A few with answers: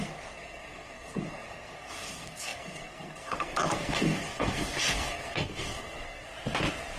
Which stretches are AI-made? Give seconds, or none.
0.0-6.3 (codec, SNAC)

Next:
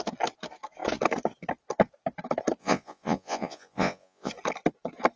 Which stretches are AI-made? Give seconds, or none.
2.6-4.3 (vocoder, Vocos)

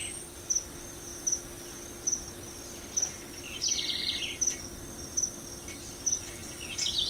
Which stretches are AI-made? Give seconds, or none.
none